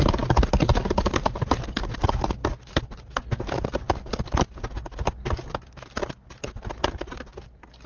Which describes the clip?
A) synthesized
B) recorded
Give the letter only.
B